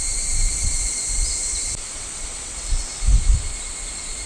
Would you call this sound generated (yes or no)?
no